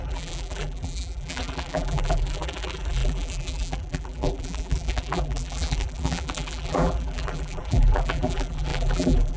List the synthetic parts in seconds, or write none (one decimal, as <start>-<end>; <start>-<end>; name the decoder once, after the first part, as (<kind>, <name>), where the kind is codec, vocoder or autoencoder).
0.0-9.4 (vocoder, BigVGAN v2)